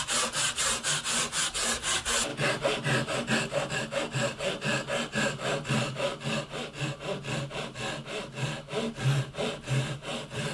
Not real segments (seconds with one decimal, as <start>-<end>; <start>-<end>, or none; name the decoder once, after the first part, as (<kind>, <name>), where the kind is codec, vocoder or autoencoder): none